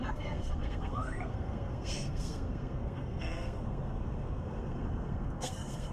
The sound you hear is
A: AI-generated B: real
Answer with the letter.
A